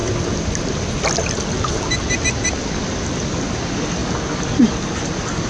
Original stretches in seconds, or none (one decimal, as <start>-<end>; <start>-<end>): 1.2-5.5